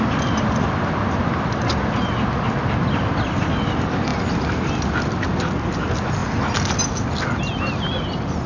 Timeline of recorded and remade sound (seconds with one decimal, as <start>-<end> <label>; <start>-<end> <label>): 0.0-8.5 recorded